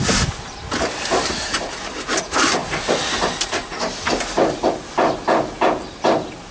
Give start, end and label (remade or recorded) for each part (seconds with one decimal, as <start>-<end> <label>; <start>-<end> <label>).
0.0-6.5 recorded

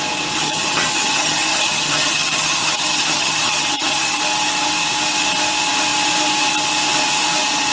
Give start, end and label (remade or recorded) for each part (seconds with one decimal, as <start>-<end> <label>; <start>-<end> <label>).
0.0-0.4 recorded; 0.4-4.2 remade; 4.2-7.7 recorded